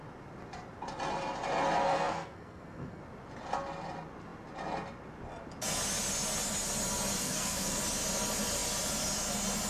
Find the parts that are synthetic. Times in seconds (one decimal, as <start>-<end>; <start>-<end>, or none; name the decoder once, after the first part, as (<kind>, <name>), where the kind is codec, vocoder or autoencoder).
1.8-3.0 (codec, SNAC); 7.2-7.8